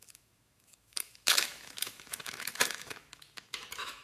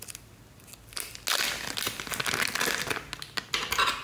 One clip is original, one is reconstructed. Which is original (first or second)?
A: second